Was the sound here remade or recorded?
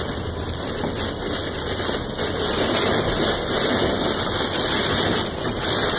recorded